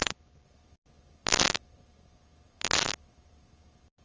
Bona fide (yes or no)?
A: yes